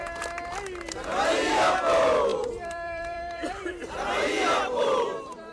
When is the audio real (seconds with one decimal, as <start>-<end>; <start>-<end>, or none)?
0.0-2.3